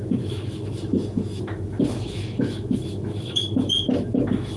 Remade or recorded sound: remade